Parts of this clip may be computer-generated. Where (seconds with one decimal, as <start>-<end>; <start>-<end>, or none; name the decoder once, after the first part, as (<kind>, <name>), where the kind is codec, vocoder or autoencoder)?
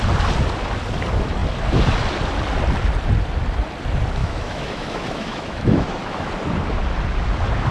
4.2-6.3 (autoencoder, DAC-VAE)